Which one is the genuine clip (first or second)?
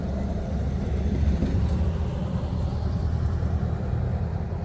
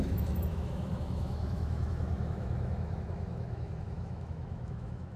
first